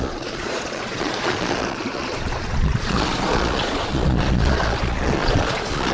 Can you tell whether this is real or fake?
fake